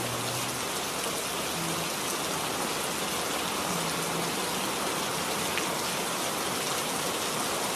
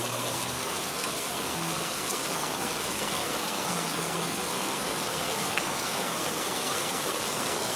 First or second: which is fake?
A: second